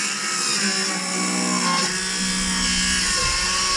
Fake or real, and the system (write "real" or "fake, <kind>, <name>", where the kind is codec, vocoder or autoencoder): real